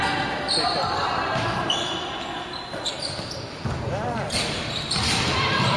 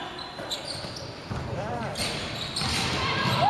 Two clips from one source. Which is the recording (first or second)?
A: first